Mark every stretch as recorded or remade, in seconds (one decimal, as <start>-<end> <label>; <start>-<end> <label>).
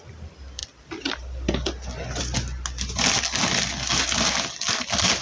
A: 0.0-5.2 recorded